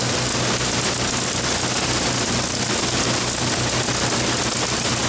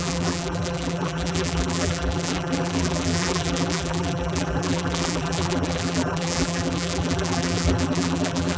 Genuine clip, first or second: first